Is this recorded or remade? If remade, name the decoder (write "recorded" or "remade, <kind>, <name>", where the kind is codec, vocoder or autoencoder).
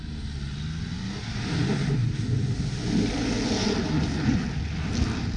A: recorded